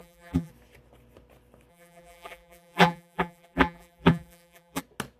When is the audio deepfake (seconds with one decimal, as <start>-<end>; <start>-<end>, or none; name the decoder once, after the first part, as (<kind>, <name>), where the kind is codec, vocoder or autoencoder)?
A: 0.0-0.5 (vocoder, BigVGAN v2); 1.7-4.8